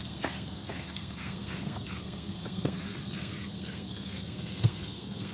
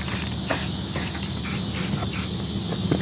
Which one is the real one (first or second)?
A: second